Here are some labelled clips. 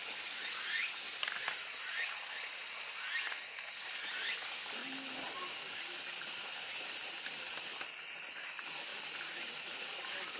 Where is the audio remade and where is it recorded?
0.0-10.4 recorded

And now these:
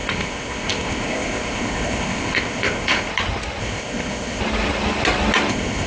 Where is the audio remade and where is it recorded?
0.0-3.1 remade; 3.1-3.6 recorded; 3.6-4.4 remade; 4.4-5.5 recorded; 5.5-5.9 remade

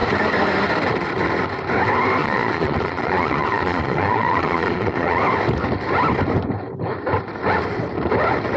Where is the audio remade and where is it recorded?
0.0-2.2 recorded; 2.2-5.2 remade; 5.2-8.6 recorded